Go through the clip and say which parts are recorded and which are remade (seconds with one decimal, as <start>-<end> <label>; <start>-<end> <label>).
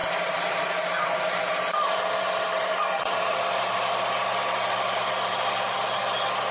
0.0-0.7 remade; 0.7-6.5 recorded